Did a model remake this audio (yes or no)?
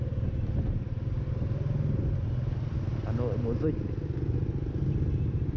no